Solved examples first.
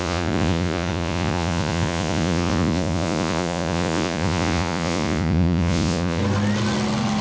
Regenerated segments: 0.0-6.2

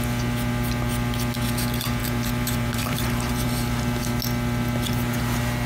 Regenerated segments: 2.0-4.0

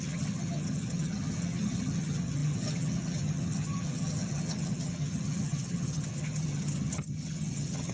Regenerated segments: 0.0-7.9

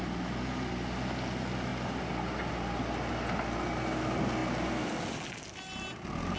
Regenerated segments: none

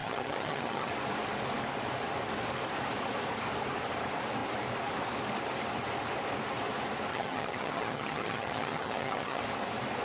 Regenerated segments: 0.0-0.9; 7.1-9.4

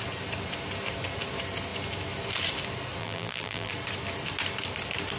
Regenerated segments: 3.0-3.7

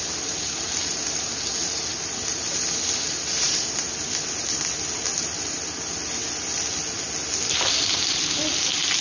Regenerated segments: none

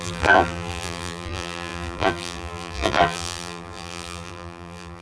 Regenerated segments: 0.0-5.0